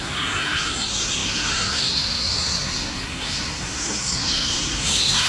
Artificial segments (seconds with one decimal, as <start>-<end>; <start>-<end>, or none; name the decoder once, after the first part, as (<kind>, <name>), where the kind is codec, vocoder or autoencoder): 0.0-5.3 (codec, SNAC)